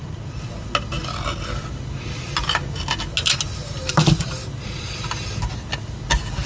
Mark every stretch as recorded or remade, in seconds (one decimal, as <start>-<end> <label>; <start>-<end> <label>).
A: 0.0-6.5 recorded